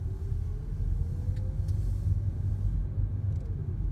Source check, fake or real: real